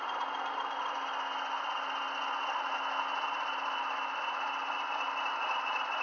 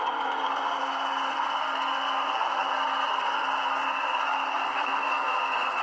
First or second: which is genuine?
first